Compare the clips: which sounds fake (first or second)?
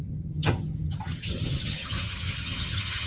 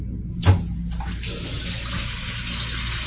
first